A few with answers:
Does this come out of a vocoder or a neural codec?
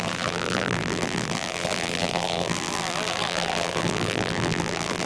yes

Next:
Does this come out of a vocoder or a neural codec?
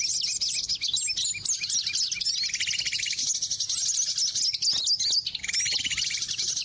no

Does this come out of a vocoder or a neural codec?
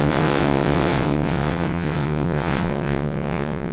yes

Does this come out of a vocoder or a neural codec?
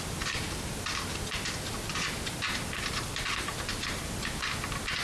no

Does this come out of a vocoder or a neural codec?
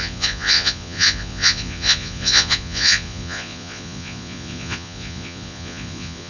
yes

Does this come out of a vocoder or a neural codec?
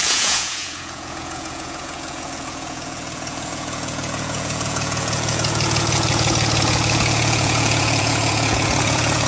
yes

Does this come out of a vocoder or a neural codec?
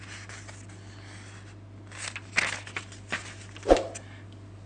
no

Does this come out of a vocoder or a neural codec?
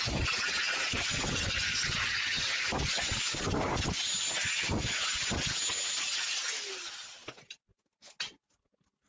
no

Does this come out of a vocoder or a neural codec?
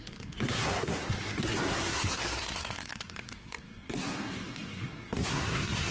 yes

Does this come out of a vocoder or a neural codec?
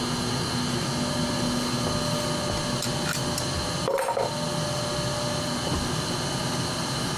no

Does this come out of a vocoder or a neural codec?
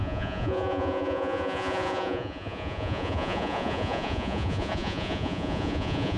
yes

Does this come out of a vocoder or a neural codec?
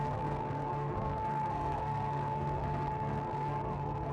yes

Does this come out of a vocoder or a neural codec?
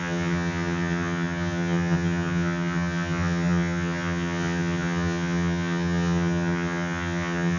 yes